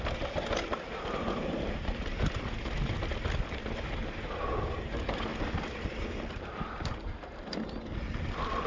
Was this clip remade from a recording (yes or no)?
no